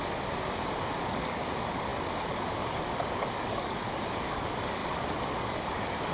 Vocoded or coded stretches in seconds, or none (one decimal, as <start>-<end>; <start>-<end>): 1.0-6.1